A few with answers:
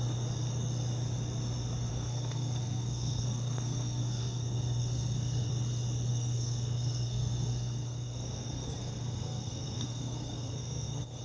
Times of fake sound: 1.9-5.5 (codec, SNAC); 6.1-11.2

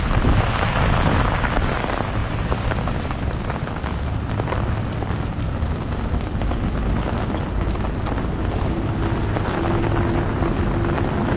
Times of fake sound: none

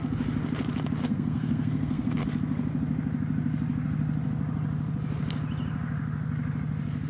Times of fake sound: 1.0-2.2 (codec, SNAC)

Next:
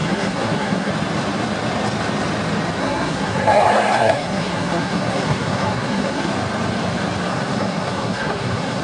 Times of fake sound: 0.0-0.9 (codec, SNAC); 2.8-6.3; 7.3-8.8

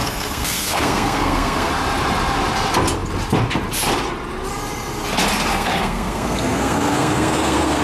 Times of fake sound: 0.0-1.7 (codec, SNAC); 5.5-7.8